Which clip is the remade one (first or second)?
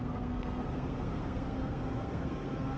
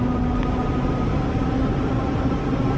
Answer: first